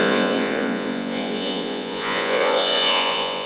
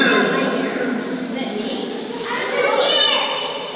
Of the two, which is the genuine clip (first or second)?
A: second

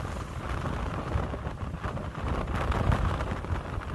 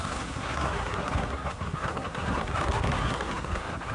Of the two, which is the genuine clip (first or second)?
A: first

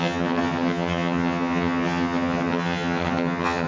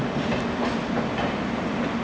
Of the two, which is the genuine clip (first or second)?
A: second